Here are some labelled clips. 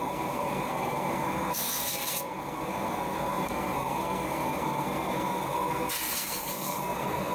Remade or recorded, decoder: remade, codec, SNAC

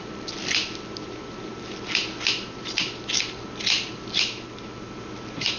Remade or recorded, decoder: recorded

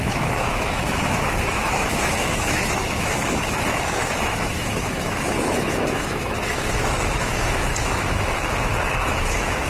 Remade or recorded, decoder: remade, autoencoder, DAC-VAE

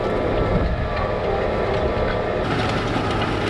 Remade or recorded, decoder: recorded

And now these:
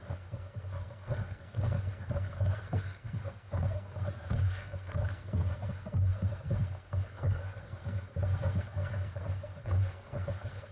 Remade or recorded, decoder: remade, codec, SNAC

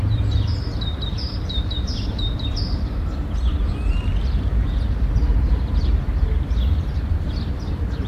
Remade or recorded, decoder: remade, vocoder, BigVGAN v2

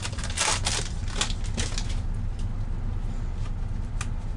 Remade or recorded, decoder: recorded